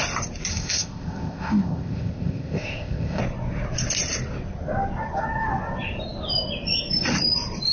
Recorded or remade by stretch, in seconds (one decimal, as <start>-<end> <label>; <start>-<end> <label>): 0.0-0.5 recorded; 0.5-3.2 remade; 3.2-7.7 recorded